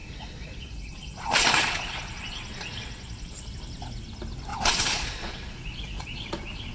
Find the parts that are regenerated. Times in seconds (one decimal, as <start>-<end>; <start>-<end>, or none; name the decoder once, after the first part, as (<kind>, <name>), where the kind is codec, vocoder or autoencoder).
0.0-3.5 (vocoder, Vocos); 4.5-6.3